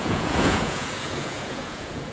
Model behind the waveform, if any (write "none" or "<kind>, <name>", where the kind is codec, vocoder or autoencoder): vocoder, Vocos